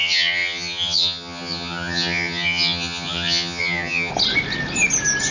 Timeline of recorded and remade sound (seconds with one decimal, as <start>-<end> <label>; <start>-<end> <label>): 0.0-4.1 remade; 4.1-5.3 recorded